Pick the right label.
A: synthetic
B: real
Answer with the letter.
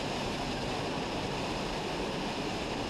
B